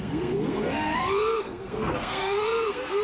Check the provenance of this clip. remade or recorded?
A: remade